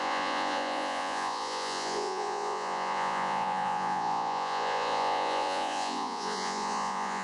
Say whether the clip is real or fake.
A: fake